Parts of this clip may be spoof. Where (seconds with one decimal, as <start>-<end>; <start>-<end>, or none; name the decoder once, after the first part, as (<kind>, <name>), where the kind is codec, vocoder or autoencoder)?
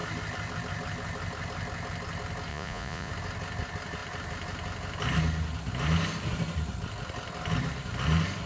2.5-3.1 (vocoder, Vocos)